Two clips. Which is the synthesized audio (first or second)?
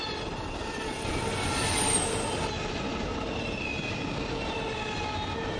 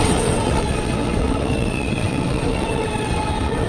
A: second